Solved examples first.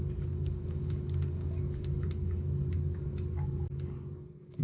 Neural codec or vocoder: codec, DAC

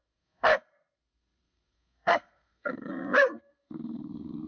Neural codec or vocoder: codec, SNAC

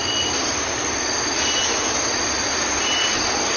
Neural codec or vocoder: none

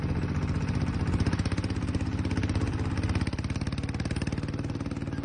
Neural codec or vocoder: none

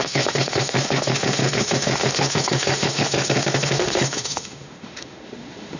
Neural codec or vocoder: autoencoder, DAC-VAE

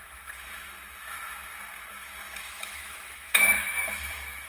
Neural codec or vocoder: autoencoder, DAC-VAE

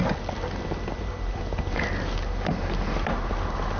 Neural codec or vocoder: none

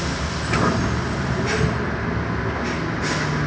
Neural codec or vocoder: none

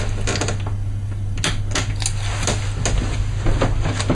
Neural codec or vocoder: none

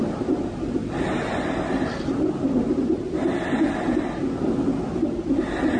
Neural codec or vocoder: none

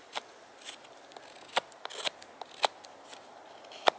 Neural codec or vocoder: none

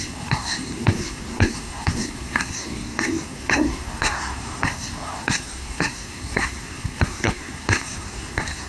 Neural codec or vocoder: codec, SNAC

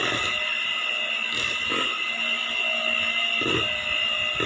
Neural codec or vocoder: none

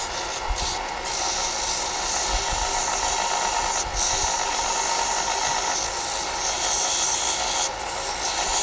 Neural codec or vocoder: none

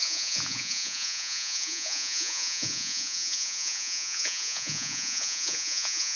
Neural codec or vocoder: vocoder, Vocos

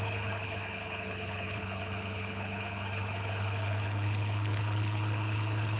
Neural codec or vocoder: codec, HILCodec